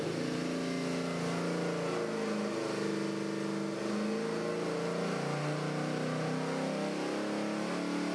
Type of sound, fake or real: real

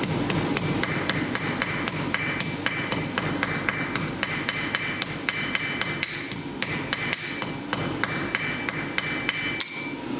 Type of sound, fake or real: real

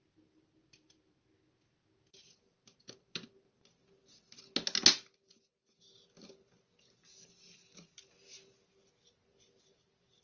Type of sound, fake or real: real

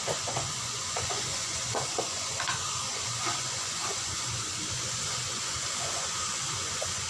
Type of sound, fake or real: fake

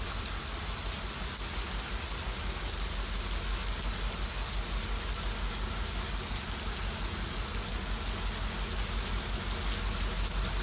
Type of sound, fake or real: real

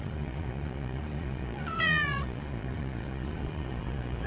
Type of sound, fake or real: fake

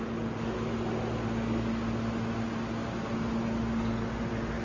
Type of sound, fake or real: real